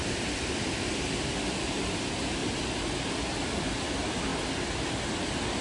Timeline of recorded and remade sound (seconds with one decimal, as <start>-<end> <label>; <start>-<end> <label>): 0.0-0.9 remade; 0.9-5.6 recorded